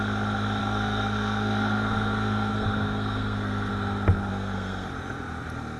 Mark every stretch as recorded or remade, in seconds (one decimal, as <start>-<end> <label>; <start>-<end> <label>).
0.0-0.6 recorded; 0.6-3.7 remade; 3.7-4.3 recorded; 4.3-4.9 remade; 4.9-5.8 recorded